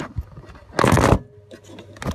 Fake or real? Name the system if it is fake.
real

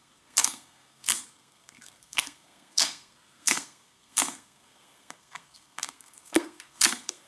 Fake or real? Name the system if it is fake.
fake, codec, SNAC